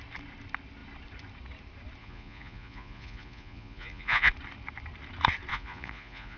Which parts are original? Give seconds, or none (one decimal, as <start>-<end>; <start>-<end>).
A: 0.0-2.0; 4.3-5.5